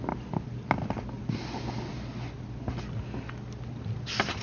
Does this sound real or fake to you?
real